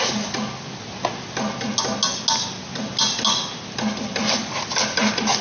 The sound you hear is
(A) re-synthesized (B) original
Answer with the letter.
B